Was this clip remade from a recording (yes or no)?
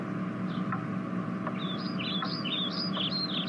no